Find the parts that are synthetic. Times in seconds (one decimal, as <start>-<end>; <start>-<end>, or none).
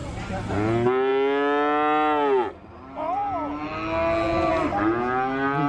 none